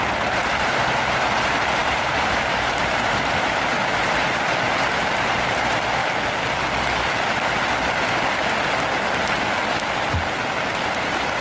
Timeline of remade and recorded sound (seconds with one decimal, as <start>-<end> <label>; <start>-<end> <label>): 0.0-6.0 remade; 6.0-10.8 recorded; 10.8-11.4 remade